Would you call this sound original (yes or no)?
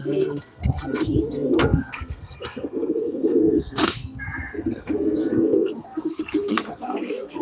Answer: no